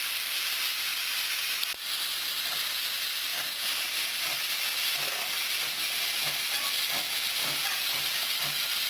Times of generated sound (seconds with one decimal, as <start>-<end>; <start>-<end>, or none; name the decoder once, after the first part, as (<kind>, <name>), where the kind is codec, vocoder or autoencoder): none